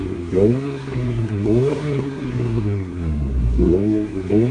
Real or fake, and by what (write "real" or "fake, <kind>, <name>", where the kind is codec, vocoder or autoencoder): fake, codec, SNAC